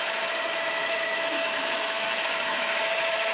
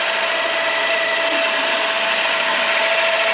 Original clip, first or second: second